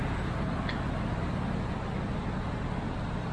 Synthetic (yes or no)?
no